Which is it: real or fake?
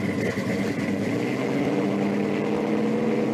real